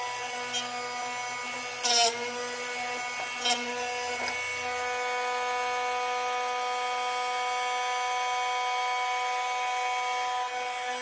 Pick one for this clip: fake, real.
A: real